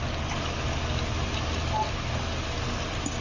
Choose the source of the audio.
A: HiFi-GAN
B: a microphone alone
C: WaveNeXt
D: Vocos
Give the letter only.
B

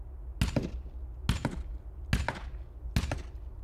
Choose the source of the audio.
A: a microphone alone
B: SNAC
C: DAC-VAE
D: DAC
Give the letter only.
A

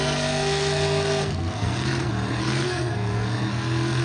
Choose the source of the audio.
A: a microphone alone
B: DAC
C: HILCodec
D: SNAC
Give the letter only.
D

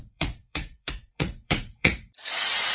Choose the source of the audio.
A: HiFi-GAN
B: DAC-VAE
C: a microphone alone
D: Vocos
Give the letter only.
D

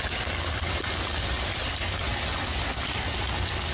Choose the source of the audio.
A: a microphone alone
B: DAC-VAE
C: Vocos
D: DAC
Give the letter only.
A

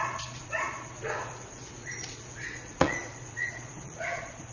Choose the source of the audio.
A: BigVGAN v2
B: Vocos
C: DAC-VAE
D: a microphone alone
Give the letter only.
B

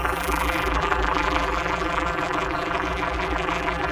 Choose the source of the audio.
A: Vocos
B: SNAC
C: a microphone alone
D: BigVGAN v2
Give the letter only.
D